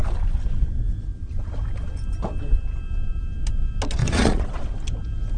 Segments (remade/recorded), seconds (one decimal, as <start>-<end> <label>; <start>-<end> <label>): 0.0-4.0 recorded; 4.0-4.6 remade; 4.6-5.4 recorded